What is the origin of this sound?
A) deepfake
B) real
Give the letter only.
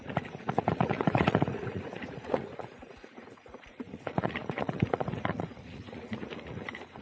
A